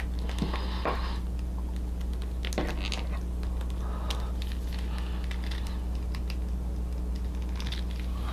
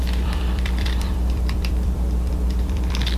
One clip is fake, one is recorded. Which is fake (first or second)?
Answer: second